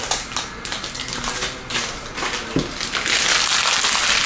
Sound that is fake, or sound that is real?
real